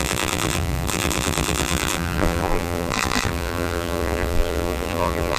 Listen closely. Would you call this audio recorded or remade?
remade